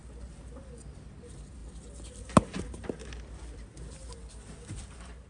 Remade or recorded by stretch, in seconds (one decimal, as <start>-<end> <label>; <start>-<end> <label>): 0.0-5.3 recorded

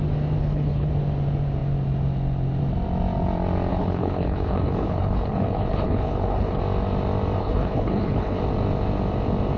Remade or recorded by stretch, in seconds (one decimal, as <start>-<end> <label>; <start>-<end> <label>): 0.0-0.4 recorded; 0.4-0.9 remade; 0.9-3.7 recorded; 3.7-6.6 remade; 6.6-7.4 recorded; 7.4-8.4 remade; 8.4-9.6 recorded

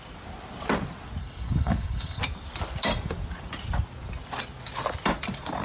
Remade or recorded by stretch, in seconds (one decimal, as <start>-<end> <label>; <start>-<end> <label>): 0.0-1.2 recorded; 1.2-2.2 remade; 2.2-5.6 recorded